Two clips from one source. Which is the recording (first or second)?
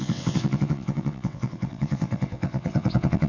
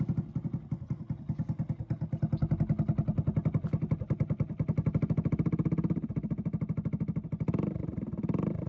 second